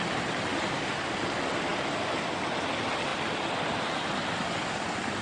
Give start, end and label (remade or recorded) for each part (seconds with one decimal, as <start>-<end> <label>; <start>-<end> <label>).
0.0-5.2 recorded

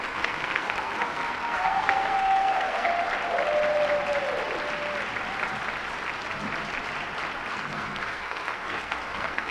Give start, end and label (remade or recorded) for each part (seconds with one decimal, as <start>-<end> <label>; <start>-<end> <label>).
0.0-2.9 remade; 2.9-7.5 recorded; 7.5-9.5 remade

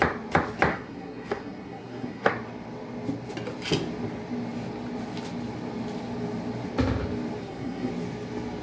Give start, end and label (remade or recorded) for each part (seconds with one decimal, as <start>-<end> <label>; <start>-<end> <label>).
0.0-0.7 recorded; 0.7-2.3 remade; 2.3-7.4 recorded; 7.4-7.9 remade; 7.9-8.6 recorded

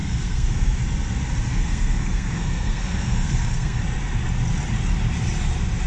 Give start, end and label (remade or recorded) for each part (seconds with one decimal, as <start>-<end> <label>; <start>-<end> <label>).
0.0-0.8 remade; 0.8-1.5 recorded; 1.5-3.8 remade; 3.8-5.9 recorded

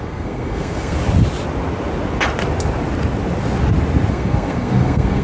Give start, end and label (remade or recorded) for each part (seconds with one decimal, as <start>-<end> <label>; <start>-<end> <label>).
0.0-1.0 remade; 1.0-4.1 recorded; 4.1-5.2 remade